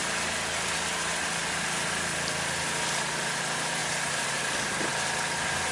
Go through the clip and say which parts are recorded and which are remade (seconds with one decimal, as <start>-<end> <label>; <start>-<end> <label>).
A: 0.0-3.8 recorded; 3.8-4.3 remade; 4.3-5.7 recorded